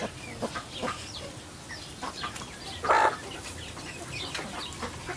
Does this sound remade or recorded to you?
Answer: recorded